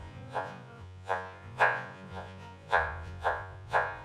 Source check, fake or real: fake